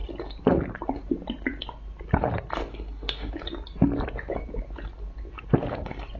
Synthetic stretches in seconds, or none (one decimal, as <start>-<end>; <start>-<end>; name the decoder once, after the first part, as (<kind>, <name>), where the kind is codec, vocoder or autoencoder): 2.7-3.3 (codec, SNAC)